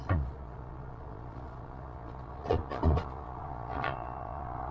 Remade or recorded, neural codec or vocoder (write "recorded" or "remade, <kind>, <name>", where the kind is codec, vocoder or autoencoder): remade, vocoder, Vocos